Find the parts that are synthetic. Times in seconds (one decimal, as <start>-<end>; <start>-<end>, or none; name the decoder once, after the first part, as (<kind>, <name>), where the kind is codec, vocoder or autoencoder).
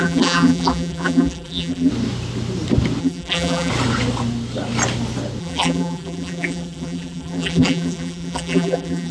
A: 0.0-1.9 (vocoder, BigVGAN v2); 3.0-3.7; 5.4-9.1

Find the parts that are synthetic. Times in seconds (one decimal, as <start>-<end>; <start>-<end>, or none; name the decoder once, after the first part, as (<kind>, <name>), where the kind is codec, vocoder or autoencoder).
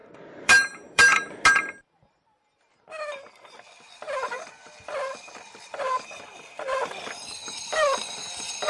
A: 0.0-1.4 (vocoder, BigVGAN v2); 7.4-8.7